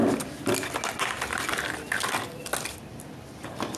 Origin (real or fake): real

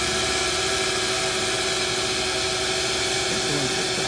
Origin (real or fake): real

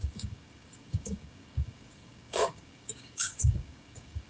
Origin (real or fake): fake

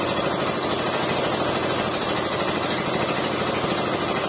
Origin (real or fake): real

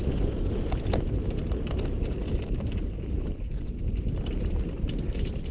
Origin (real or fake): real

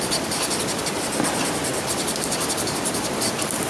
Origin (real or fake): fake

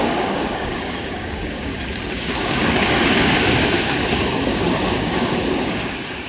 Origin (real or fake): fake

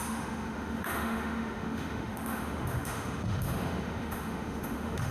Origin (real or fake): fake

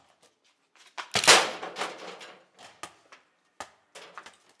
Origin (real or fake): real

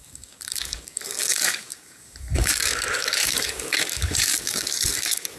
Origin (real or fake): fake